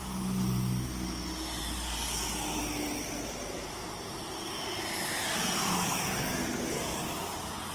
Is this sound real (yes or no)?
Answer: yes